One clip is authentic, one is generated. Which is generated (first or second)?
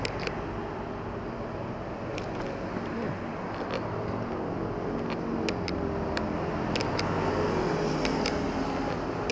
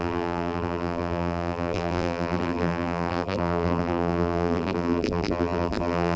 second